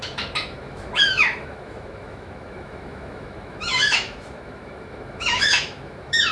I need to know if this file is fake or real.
fake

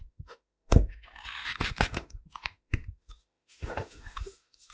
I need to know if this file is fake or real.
fake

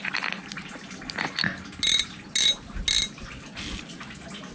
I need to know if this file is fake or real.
real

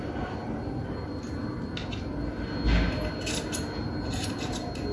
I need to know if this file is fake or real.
real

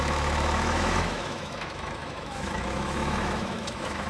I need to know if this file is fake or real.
fake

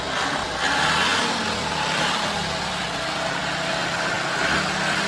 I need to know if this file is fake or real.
real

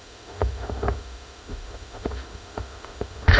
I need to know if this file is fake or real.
fake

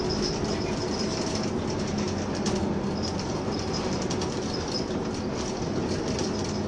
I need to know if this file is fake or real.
real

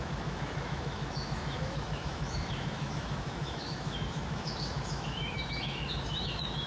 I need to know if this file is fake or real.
fake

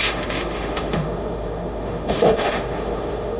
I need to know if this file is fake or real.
fake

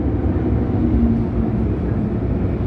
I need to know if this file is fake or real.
real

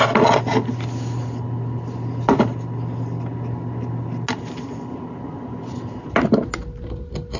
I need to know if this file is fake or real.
real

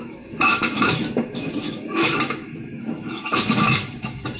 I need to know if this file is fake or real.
fake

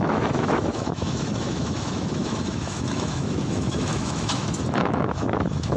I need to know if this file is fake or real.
fake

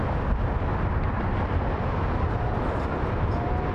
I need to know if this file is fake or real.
real